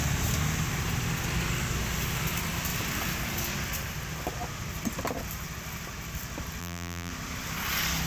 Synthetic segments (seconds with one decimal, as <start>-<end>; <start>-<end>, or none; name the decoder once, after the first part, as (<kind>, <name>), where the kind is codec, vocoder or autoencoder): 6.6-7.1 (vocoder, BigVGAN v2)